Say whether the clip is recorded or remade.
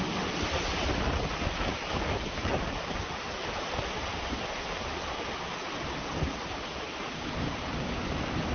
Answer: recorded